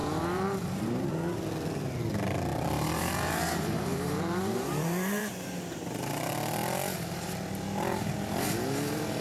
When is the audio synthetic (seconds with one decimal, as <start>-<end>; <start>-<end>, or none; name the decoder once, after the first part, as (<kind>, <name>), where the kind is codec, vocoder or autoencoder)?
0.0-1.1 (vocoder, BigVGAN v2); 2.5-5.8